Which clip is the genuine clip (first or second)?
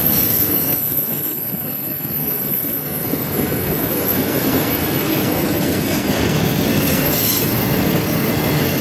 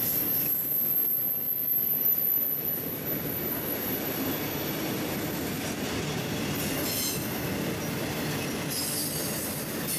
second